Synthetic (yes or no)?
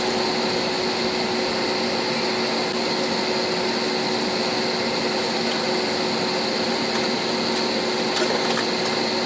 no